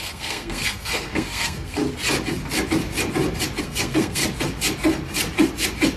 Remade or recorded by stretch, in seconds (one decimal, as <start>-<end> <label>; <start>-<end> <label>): 0.0-1.8 remade; 1.8-3.6 recorded; 3.6-4.2 remade; 4.2-6.0 recorded